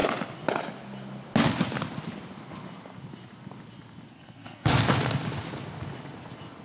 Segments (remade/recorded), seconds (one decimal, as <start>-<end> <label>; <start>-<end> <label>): 0.0-4.1 recorded; 4.1-4.7 remade; 4.7-6.6 recorded